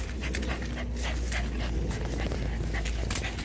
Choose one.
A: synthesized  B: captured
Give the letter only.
B